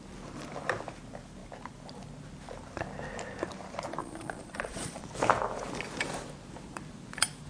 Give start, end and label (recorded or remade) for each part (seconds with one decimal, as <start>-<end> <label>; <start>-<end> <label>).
0.0-4.0 recorded; 4.0-5.0 remade; 5.0-7.5 recorded